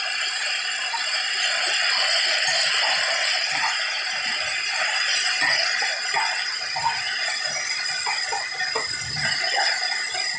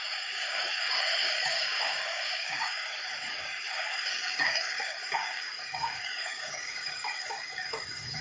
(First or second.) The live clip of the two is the first